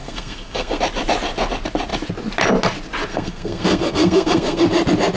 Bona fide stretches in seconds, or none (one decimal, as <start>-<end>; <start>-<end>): 0.8-3.1; 4.6-5.2

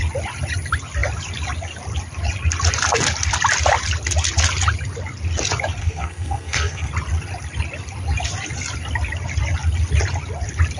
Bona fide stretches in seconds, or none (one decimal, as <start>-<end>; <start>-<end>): 0.0-5.8; 6.9-10.8

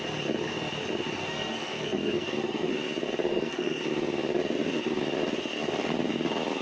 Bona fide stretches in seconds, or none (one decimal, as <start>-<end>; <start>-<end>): 0.0-1.2; 2.7-3.3; 3.8-6.6

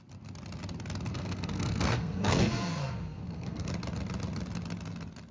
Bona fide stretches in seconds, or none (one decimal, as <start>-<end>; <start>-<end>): 0.0-1.1; 3.7-5.3

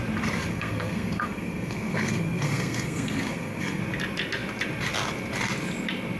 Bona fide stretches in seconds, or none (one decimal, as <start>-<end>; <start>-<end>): 0.0-0.5; 3.8-6.2